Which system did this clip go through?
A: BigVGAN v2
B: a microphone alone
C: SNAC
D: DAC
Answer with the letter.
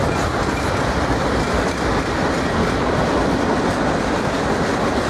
B